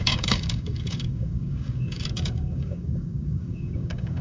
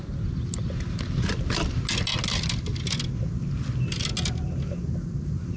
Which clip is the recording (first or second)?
second